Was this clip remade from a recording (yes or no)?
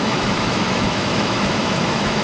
yes